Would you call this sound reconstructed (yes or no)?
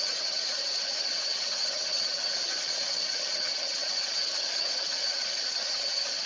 yes